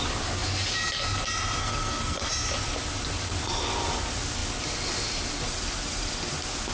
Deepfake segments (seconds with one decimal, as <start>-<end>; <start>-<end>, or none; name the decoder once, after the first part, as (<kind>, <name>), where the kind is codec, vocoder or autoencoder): 1.6-2.3 (codec, SNAC)